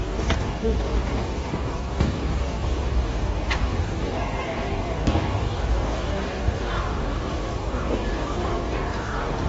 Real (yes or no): no